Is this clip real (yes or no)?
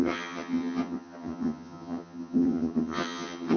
no